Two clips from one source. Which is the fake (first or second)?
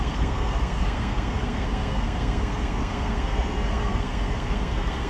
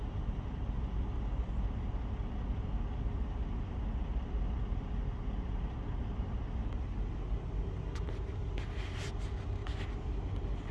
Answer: first